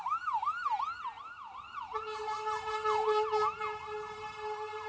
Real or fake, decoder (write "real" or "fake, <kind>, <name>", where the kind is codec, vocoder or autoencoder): real